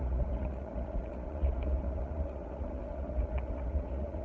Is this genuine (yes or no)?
no